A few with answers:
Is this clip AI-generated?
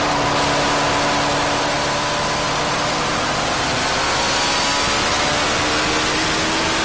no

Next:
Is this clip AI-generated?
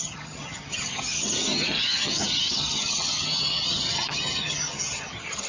yes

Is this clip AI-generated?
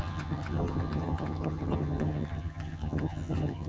yes